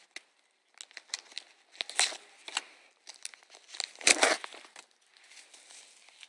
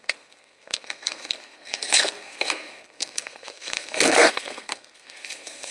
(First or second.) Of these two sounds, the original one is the first